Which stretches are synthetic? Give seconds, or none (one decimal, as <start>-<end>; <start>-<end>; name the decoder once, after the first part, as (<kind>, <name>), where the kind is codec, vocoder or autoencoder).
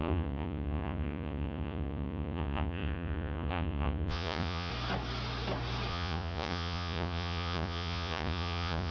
0.0-4.7 (vocoder, Vocos); 5.9-8.9